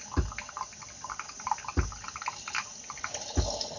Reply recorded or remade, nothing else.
recorded